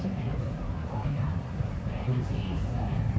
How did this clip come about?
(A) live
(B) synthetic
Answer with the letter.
B